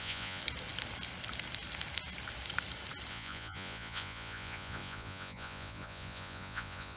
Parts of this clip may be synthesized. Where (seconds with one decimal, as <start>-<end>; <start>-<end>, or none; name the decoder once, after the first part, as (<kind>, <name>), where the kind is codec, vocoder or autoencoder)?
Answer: 0.0-0.4 (vocoder, Vocos); 3.1-7.0